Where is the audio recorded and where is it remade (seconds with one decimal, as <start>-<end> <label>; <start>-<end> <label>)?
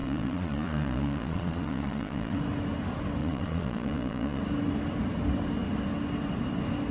0.0-2.4 remade; 2.4-3.2 recorded; 3.2-4.4 remade; 4.4-6.9 recorded